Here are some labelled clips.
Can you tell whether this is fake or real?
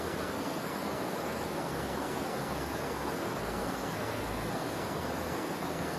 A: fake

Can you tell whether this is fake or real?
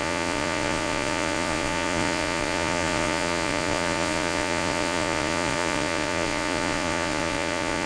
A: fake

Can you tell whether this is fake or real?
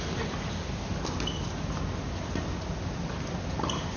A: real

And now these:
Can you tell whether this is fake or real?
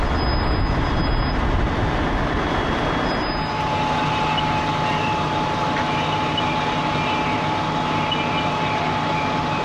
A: real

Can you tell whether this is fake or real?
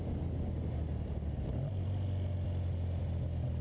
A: real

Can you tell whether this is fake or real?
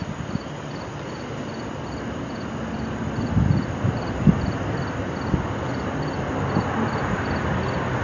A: real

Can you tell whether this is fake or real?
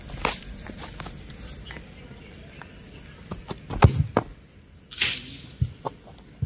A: real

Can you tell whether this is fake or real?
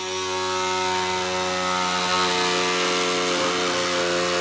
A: real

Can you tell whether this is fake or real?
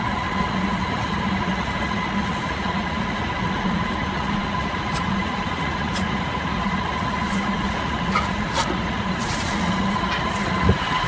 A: fake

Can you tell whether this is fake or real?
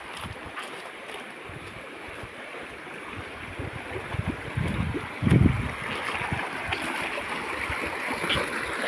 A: real